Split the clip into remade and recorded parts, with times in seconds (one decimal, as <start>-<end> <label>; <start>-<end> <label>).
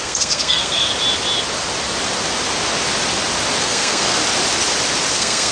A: 0.0-0.9 remade; 0.9-3.6 recorded; 3.6-4.2 remade; 4.2-5.1 recorded; 5.1-5.5 remade